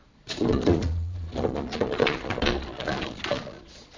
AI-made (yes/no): yes